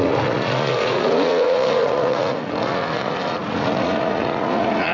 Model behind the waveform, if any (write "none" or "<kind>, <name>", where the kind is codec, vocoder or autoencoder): vocoder, Vocos